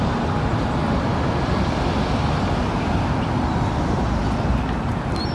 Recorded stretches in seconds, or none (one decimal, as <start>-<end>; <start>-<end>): 0.0-5.3